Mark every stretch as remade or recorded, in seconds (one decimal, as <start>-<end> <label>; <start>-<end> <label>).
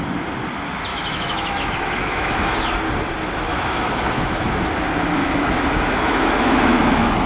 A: 0.0-0.9 recorded; 0.9-2.6 remade; 2.6-3.5 recorded; 3.5-4.7 remade; 4.7-5.2 recorded; 5.2-7.3 remade